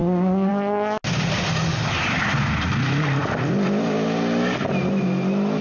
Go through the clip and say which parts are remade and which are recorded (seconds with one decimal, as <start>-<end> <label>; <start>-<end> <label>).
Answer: 0.0-0.5 remade; 0.5-5.6 recorded